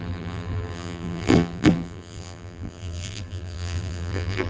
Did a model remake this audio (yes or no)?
yes